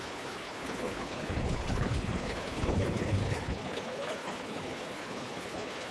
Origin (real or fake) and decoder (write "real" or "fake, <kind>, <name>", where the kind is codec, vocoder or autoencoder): fake, codec, HILCodec